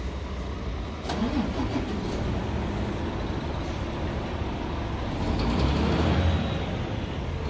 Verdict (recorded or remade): recorded